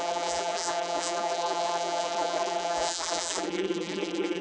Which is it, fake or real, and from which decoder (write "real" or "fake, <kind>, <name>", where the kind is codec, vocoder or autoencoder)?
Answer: fake, vocoder, BigVGAN v2